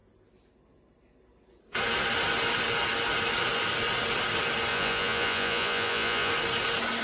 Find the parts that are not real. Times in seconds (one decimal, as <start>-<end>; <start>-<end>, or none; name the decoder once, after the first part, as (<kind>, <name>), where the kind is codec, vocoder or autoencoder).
4.7-6.3 (vocoder, Vocos)